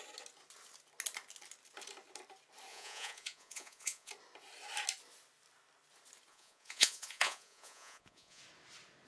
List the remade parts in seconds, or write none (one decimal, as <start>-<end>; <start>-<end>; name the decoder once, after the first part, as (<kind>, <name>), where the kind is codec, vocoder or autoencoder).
2.7-4.1 (vocoder, Vocos); 6.3-8.4